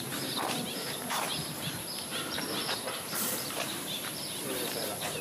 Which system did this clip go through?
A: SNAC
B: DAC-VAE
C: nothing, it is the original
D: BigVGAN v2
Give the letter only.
D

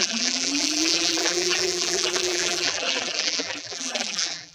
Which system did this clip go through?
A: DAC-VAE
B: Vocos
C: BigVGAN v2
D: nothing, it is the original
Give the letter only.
C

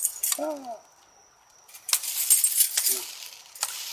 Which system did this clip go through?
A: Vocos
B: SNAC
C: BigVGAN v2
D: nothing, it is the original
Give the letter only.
D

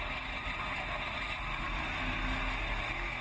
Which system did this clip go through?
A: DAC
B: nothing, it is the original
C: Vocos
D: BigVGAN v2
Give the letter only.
B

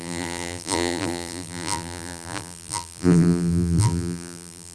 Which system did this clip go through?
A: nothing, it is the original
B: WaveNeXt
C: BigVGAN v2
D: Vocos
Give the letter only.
C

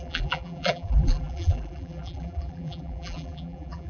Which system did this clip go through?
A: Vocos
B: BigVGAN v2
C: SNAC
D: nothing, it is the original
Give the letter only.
B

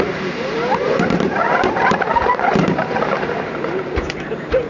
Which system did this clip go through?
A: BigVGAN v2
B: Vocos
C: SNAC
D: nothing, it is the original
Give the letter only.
A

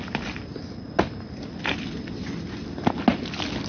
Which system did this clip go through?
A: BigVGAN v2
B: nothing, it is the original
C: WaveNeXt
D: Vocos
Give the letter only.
B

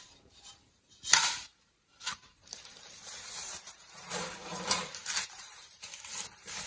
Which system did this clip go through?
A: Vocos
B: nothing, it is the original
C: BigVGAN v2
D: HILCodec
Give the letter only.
C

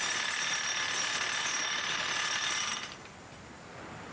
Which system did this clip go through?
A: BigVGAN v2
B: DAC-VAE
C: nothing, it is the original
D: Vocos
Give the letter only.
A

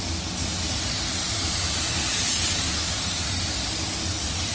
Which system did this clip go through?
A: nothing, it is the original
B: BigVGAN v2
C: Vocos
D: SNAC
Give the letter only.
A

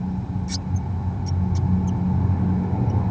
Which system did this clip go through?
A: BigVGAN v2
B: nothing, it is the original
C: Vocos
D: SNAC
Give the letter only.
B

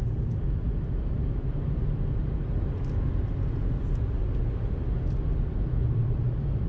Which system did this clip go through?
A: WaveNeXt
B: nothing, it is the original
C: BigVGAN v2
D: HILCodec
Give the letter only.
B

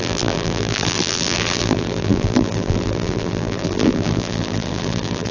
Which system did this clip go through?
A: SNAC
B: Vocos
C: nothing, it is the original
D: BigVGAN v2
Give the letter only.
D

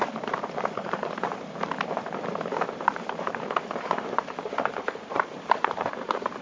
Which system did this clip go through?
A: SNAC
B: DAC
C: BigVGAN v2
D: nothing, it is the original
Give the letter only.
C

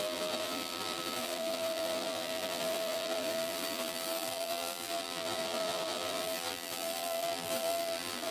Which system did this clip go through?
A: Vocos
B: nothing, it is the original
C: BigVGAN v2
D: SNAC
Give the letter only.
C